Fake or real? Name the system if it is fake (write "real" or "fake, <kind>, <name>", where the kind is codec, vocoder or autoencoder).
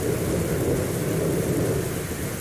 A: real